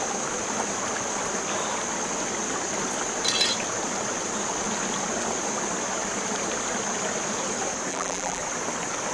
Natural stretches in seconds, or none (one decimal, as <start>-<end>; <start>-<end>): 0.0-7.9; 8.4-9.1